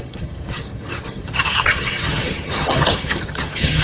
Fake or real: fake